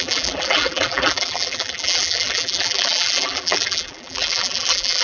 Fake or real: fake